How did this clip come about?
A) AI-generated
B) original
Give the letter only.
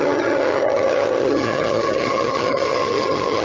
A